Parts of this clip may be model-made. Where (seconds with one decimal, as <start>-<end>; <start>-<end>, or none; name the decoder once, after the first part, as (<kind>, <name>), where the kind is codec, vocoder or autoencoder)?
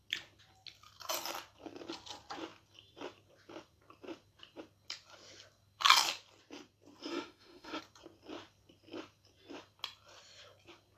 7.0-7.8 (autoencoder, DAC-VAE)